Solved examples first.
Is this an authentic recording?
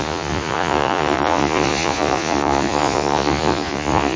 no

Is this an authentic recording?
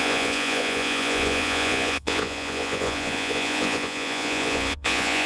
no